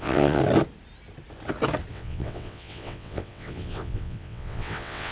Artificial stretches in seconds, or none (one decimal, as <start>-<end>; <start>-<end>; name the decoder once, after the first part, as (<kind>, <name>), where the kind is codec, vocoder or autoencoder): 0.0-0.4 (vocoder, WaveNeXt); 1.9-5.1

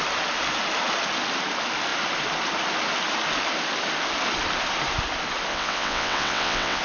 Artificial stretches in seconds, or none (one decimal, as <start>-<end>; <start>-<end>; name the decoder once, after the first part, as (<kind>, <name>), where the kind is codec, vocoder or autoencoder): 5.5-6.8 (vocoder, WaveNeXt)

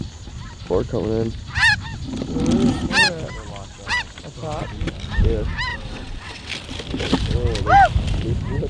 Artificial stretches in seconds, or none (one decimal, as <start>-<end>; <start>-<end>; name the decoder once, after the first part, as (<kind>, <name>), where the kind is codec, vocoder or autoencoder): 5.7-6.5 (vocoder, WaveNeXt)

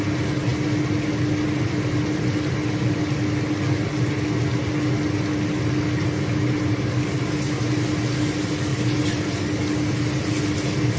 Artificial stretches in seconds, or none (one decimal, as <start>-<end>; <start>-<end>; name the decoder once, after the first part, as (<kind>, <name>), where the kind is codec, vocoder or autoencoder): none

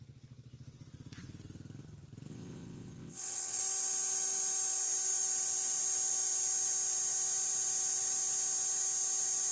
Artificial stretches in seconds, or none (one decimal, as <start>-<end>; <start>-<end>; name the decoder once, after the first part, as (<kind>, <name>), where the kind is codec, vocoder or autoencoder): 2.3-3.6 (vocoder, WaveNeXt)

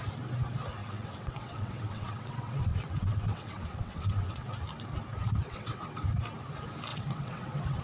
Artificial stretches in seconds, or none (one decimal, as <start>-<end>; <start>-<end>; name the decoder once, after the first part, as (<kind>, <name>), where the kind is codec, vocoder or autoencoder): 0.8-4.5 (vocoder, WaveNeXt); 5.1-5.9; 6.9-7.8

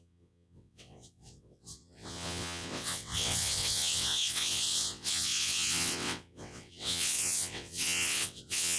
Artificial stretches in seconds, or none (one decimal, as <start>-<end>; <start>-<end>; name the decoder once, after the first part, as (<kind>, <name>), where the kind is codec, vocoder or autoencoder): 0.0-8.8 (vocoder, WaveNeXt)